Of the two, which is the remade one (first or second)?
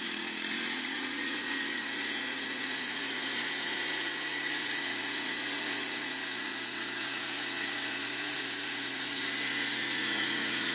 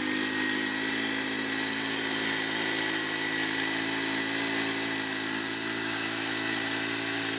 first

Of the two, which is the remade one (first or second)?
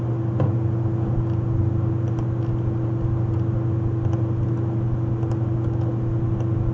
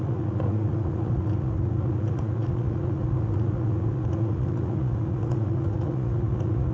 second